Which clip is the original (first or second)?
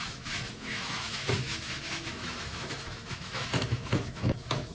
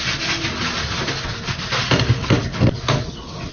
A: second